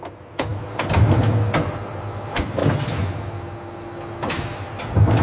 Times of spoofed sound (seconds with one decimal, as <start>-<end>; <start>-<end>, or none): none